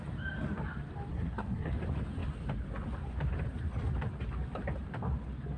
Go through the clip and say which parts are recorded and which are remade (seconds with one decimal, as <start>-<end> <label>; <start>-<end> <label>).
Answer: 0.0-1.1 recorded; 1.1-1.7 remade; 1.7-5.6 recorded